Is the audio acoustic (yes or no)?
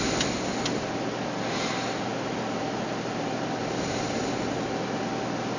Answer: yes